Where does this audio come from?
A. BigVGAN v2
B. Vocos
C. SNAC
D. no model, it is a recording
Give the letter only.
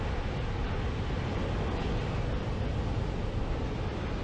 D